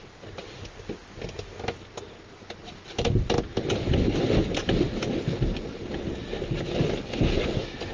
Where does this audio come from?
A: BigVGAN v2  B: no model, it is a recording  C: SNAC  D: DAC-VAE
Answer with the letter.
B